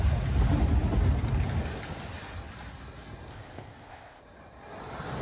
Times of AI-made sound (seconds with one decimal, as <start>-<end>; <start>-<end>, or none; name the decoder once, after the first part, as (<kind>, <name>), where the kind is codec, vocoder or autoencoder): 3.3-4.2 (codec, ZipCodec)